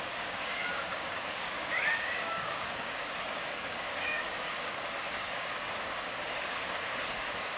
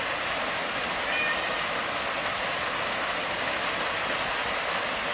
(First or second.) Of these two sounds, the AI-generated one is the first